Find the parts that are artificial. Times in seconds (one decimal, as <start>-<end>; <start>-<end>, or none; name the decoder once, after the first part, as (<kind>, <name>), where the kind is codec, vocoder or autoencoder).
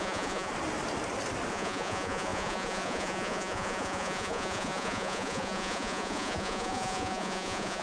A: 0.0-0.5 (vocoder, Vocos); 1.5-7.8